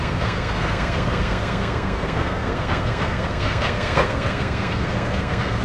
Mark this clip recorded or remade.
remade